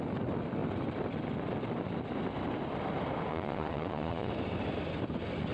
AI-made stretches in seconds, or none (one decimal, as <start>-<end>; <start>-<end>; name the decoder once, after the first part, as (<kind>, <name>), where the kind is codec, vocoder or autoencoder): 3.3-4.3 (vocoder, Vocos)